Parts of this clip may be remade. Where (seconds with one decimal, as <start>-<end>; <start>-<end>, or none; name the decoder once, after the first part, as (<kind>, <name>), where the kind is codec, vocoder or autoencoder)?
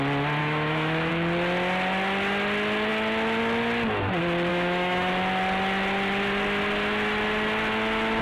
0.4-1.1 (autoencoder, DAC-VAE); 4.5-5.1